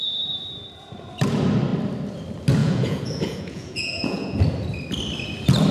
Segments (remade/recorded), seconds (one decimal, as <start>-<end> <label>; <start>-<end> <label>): 0.0-2.6 recorded; 2.6-4.4 remade; 4.4-5.7 recorded